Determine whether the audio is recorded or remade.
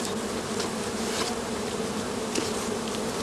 recorded